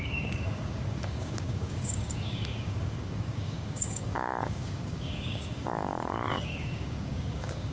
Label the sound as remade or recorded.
remade